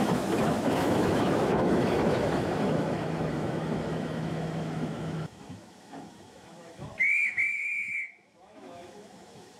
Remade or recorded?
remade